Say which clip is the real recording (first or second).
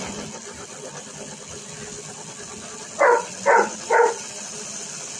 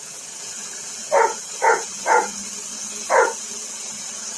first